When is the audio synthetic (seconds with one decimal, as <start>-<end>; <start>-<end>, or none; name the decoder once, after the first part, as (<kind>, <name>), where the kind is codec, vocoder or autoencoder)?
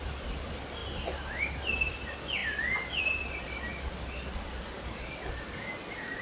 none